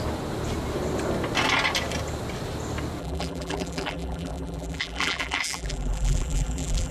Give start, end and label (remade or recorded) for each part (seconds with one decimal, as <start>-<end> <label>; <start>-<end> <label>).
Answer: 0.0-3.0 recorded; 3.0-6.9 remade